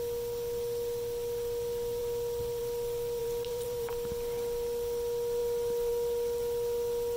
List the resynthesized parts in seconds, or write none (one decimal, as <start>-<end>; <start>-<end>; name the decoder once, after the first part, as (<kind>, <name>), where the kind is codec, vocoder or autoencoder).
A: 3.2-3.9 (vocoder, BigVGAN v2)